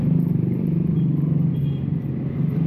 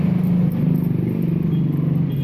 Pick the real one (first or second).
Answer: second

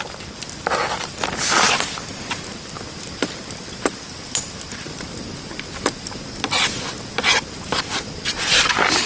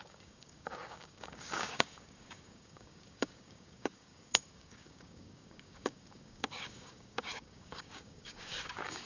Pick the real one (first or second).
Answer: first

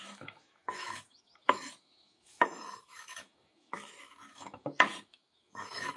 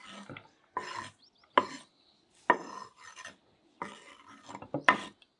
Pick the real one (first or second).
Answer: second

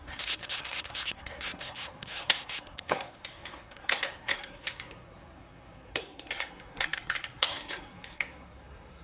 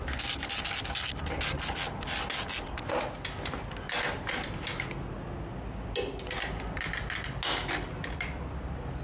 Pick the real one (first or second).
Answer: second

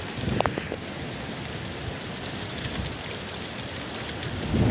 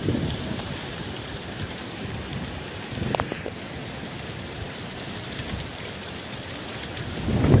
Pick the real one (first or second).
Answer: first